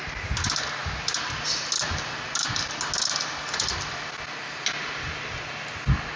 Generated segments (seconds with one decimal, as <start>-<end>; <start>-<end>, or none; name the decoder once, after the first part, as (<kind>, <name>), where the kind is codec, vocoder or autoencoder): none